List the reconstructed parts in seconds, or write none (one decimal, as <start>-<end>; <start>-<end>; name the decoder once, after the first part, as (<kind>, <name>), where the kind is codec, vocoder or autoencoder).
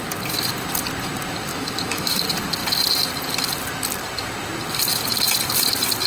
1.5-2.2 (autoencoder, DAC-VAE)